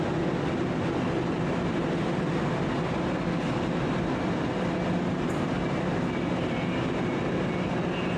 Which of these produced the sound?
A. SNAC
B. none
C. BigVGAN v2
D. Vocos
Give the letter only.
B